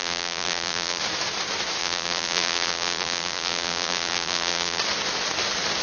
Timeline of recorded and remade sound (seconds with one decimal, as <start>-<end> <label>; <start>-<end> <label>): 0.0-1.0 remade; 1.0-1.8 recorded; 1.8-4.8 remade; 4.8-5.8 recorded